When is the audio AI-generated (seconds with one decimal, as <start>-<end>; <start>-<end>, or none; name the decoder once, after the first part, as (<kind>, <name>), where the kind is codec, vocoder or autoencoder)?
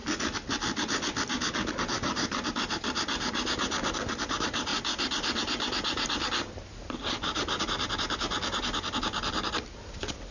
none